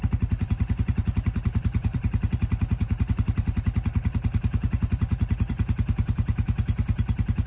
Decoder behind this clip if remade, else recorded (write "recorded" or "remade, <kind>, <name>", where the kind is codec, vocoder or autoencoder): remade, vocoder, BigVGAN v2